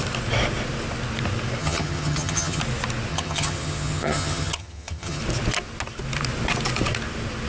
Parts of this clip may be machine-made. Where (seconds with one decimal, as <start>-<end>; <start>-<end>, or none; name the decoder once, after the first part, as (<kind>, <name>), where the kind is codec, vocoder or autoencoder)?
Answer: 1.6-2.6 (vocoder, HiFi-GAN); 3.1-5.2